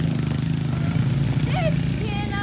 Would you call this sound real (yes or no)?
yes